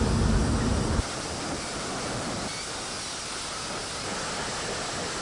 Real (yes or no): yes